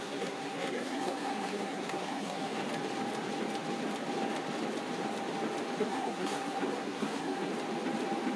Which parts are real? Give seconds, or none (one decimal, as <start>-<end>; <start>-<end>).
2.6-5.8; 7.5-8.4